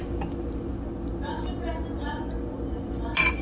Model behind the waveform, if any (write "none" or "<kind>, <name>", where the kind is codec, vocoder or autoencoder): none